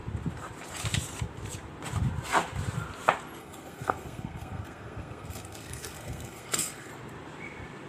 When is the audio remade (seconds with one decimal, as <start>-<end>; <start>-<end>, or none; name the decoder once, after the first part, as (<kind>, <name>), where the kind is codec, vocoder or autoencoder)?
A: 3.4-6.9 (codec, SNAC)